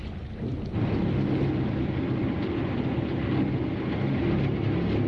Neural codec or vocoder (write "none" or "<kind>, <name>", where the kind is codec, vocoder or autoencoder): none